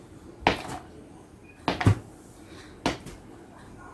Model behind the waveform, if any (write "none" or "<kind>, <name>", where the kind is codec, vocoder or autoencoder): none